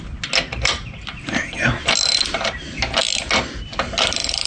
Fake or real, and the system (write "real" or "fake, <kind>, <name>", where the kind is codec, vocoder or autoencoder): real